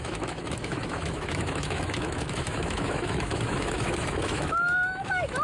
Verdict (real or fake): fake